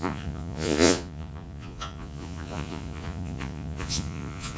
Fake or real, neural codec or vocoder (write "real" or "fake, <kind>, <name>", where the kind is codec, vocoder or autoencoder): fake, vocoder, Vocos